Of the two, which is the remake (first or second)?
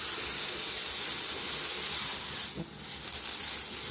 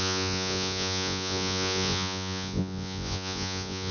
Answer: second